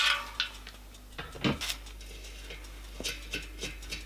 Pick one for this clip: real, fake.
real